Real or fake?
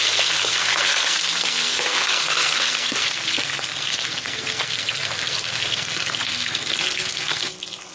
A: fake